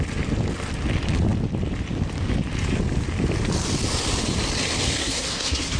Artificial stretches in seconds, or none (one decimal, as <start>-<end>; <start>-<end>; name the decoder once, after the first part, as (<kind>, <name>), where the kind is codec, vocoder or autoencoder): 5.0-5.8 (codec, SNAC)